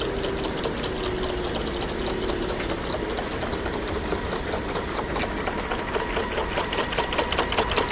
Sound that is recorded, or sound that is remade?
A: recorded